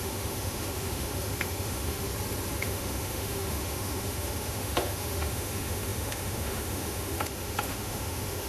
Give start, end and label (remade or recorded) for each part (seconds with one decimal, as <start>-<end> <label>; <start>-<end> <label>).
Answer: 0.0-2.1 remade; 2.1-2.6 recorded; 2.6-8.5 remade